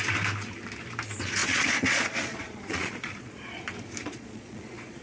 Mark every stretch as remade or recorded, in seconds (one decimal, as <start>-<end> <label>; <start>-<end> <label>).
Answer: 0.0-1.4 recorded; 1.4-3.6 remade; 3.6-4.0 recorded; 4.0-5.0 remade